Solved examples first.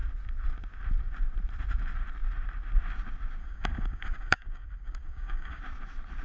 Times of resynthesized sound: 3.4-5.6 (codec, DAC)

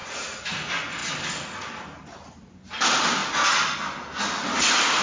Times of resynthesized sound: 0.0-0.5 (vocoder, Vocos)

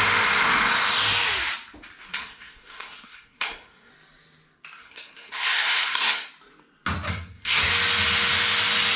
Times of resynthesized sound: 2.0-3.9 (codec, SNAC); 4.8-6.3; 7.1-7.7

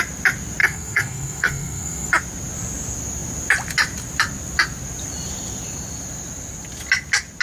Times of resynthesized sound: 0.6-2.1 (codec, SNAC)